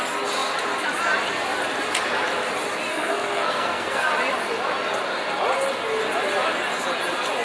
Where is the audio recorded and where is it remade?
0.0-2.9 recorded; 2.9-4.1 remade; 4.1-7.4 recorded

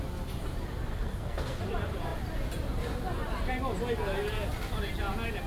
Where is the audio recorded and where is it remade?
0.0-0.9 recorded; 0.9-1.6 remade; 1.6-5.5 recorded

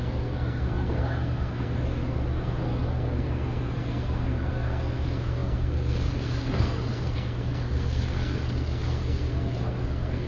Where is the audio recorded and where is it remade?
0.0-10.3 remade

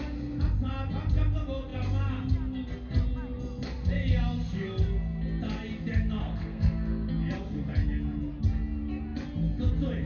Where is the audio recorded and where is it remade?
0.0-6.2 recorded; 6.2-7.1 remade; 7.1-10.1 recorded

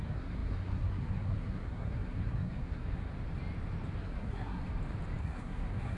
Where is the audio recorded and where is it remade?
0.0-3.1 remade; 3.1-4.0 recorded; 4.0-4.7 remade; 4.7-5.2 recorded; 5.2-6.0 remade

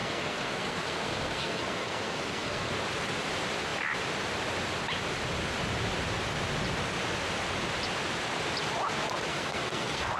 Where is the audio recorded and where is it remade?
0.0-2.7 remade; 2.7-9.3 recorded; 9.3-10.2 remade